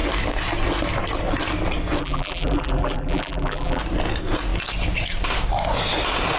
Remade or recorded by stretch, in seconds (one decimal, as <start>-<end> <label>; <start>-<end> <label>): 0.0-2.0 recorded; 2.0-3.8 remade; 3.8-6.4 recorded